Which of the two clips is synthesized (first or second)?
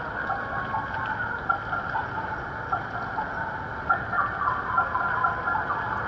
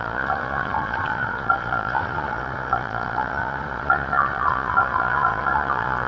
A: second